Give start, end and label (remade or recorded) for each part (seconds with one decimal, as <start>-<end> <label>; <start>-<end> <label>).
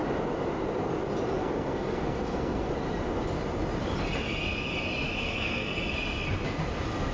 0.0-1.4 recorded; 1.4-2.7 remade; 2.7-5.2 recorded; 5.2-5.8 remade; 5.8-7.1 recorded